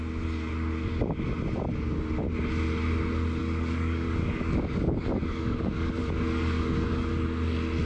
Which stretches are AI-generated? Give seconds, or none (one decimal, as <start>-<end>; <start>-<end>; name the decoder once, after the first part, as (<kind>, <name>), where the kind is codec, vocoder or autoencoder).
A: 3.4-7.1 (codec, DAC)

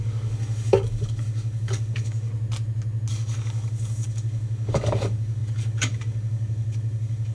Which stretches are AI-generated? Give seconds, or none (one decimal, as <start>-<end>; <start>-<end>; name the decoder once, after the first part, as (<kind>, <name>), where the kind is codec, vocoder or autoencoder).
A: 0.0-2.3 (codec, DAC); 3.1-7.3

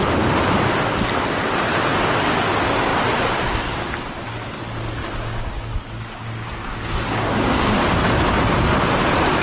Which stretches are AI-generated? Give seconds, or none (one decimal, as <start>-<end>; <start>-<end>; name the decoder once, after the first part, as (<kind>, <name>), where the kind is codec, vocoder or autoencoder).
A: 5.0-7.8 (codec, DAC)